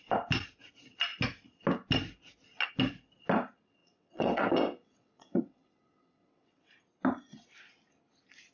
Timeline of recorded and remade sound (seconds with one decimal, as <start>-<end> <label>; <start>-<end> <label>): 0.0-3.8 recorded; 3.8-6.7 remade; 6.7-8.5 recorded